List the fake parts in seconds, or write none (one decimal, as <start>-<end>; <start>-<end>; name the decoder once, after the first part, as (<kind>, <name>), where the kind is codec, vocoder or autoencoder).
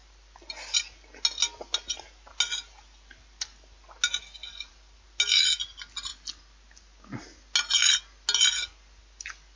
none